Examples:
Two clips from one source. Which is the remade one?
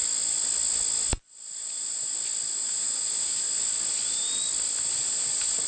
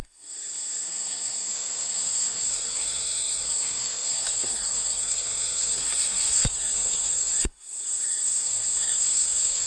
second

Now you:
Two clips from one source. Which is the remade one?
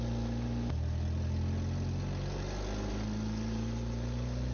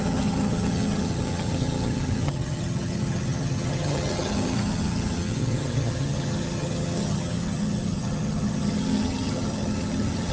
second